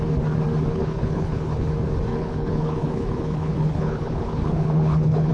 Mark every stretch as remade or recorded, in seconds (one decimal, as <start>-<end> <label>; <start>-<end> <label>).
0.0-0.7 recorded; 0.7-1.7 remade; 1.7-2.1 recorded; 2.1-5.3 remade